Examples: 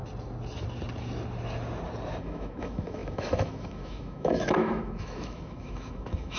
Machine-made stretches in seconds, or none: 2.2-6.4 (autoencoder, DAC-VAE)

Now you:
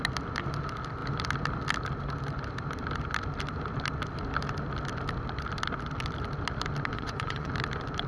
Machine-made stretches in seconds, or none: 6.9-7.5 (vocoder, Vocos)

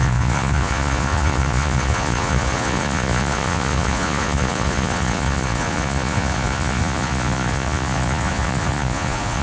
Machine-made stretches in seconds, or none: 0.0-9.4 (vocoder, Vocos)